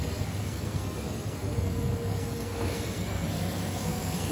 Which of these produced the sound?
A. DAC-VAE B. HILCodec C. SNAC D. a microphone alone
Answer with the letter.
C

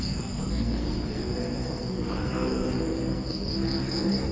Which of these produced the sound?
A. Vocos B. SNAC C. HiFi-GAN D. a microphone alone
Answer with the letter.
B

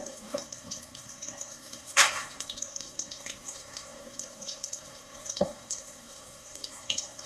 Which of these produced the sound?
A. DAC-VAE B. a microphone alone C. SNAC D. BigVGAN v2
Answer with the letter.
C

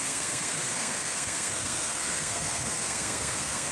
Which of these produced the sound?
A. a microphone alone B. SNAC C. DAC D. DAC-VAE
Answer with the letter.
B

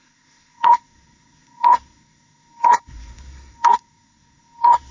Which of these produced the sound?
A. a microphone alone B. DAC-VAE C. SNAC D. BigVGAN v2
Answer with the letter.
C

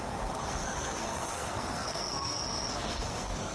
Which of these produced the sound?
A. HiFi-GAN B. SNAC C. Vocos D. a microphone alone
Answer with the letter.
B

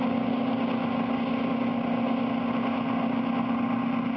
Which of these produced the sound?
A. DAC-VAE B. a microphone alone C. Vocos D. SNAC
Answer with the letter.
B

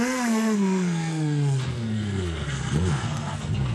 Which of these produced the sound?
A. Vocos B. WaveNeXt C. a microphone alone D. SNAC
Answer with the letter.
D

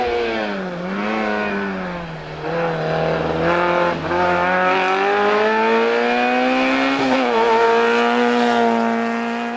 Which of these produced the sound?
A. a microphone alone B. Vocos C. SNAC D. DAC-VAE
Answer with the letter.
A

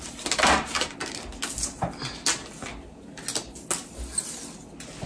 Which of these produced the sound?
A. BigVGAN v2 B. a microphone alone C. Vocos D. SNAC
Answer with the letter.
B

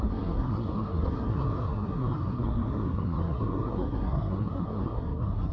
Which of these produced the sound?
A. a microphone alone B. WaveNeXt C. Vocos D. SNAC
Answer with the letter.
D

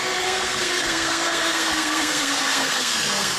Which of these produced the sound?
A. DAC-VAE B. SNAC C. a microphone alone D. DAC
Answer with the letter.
B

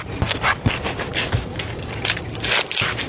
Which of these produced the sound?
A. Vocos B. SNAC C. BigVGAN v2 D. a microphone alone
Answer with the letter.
D